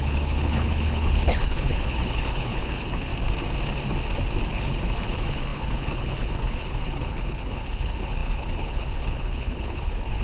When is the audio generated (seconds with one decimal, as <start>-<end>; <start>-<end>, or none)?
0.0-3.1; 4.5-10.2